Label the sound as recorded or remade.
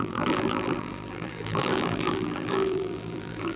remade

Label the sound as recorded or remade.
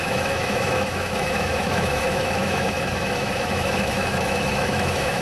remade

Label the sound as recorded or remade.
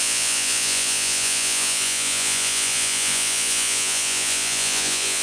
remade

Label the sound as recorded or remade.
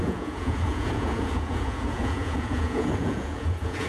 remade